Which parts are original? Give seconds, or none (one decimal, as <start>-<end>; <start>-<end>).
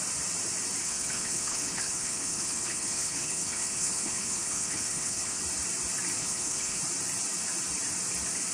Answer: 0.0-0.8; 5.4-6.2; 6.8-8.5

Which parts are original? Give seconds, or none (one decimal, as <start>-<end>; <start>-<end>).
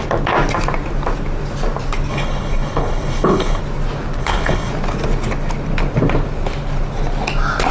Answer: 0.0-2.1; 3.6-4.2; 4.7-7.7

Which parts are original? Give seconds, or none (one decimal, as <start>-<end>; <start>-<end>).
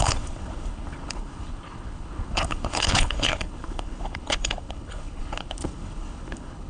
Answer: none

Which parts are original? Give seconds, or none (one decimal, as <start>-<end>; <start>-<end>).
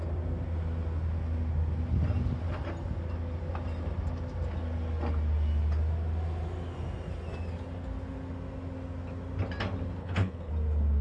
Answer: 0.0-10.0; 10.5-11.0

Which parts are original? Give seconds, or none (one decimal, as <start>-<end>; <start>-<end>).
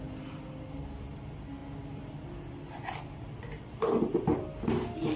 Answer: 0.0-5.2